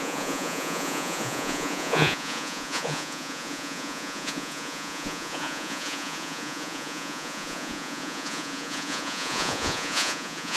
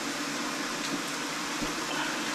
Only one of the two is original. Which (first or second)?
second